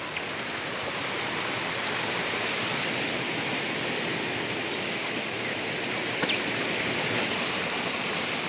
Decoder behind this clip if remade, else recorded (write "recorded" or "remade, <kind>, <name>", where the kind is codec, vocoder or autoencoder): recorded